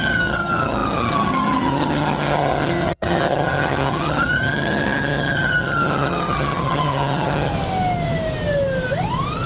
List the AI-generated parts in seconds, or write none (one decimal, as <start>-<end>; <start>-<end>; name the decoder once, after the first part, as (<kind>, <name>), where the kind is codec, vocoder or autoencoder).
0.0-7.5 (vocoder, HiFi-GAN)